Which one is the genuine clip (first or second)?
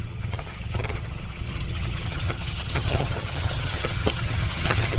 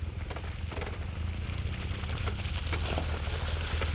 second